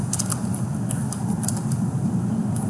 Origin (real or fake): real